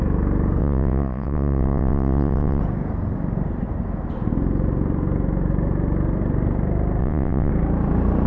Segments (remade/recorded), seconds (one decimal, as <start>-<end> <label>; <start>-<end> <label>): 0.0-0.6 recorded; 0.6-2.6 remade; 2.6-7.0 recorded; 7.0-7.5 remade; 7.5-8.3 recorded